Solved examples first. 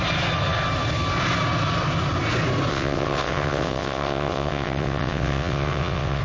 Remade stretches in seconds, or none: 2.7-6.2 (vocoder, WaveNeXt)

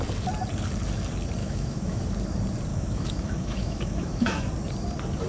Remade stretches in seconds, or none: 1.4-2.0 (autoencoder, DAC-VAE); 2.7-4.5

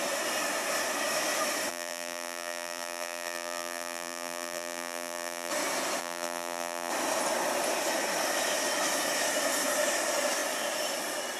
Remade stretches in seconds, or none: 1.7-5.5 (vocoder, BigVGAN v2); 6.0-6.9

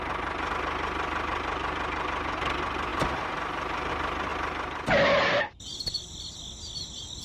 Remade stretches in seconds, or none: none

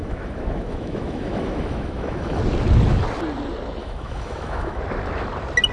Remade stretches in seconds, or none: 0.0-2.4 (autoencoder, DAC-VAE); 3.8-4.8